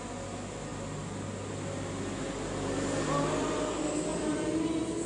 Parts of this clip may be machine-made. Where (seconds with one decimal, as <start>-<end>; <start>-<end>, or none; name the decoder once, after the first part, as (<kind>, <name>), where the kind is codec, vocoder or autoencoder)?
4.1-5.1 (vocoder, BigVGAN v2)